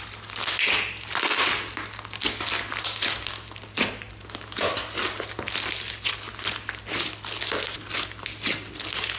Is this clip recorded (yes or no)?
yes